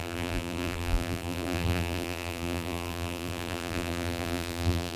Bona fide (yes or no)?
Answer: no